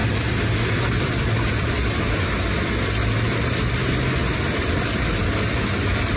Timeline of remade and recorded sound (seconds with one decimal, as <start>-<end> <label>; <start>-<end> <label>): 0.0-1.7 remade; 1.7-4.2 recorded; 4.2-6.2 remade